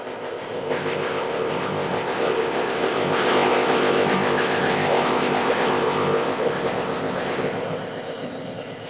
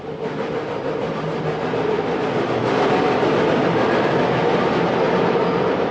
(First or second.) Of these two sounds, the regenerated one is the first